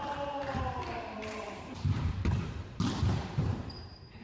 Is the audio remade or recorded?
remade